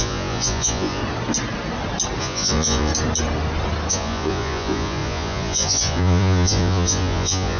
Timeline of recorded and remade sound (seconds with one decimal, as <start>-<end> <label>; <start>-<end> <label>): 0.0-1.0 remade; 1.0-2.2 recorded; 2.2-2.9 remade; 2.9-3.9 recorded; 3.9-7.6 remade